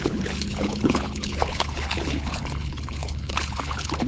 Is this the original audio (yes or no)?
no